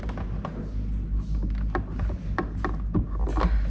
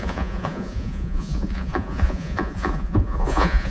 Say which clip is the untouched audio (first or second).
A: first